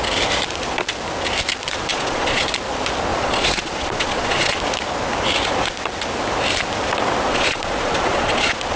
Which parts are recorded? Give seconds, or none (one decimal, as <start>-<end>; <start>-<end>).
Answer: 0.0-1.9; 2.4-3.1; 4.6-7.3